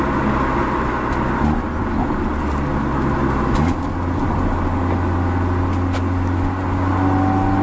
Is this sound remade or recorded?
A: recorded